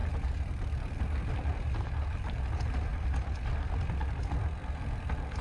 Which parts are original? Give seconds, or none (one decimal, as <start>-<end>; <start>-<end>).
1.9-2.9; 3.5-5.4